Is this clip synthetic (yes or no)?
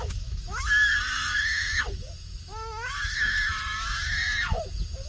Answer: yes